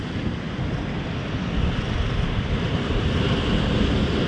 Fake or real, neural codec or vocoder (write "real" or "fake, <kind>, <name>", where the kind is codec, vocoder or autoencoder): real